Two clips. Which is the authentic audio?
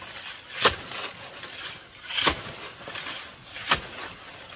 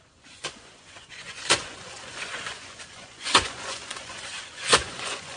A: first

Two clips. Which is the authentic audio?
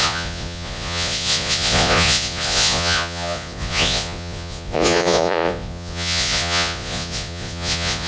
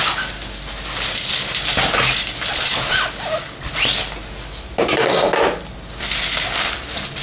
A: second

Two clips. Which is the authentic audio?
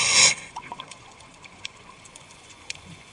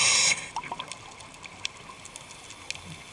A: second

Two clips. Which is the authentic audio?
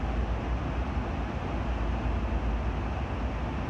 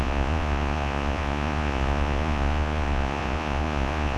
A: first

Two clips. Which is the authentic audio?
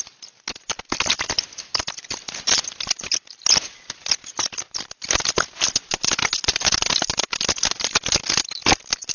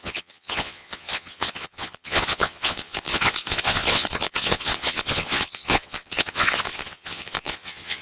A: first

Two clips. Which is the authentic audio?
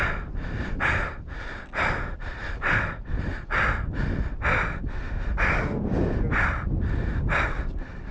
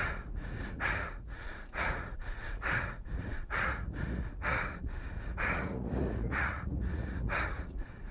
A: first